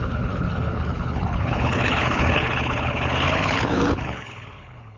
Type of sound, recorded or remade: remade